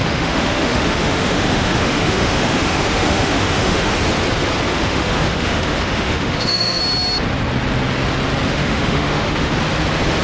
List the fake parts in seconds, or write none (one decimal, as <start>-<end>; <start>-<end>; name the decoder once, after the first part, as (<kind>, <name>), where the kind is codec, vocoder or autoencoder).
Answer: 0.0-3.9 (autoencoder, DAC-VAE); 4.7-6.8; 8.4-9.5